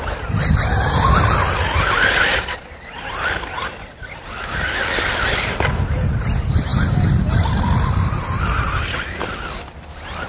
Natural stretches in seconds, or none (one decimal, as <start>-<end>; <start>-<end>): 0.0-10.3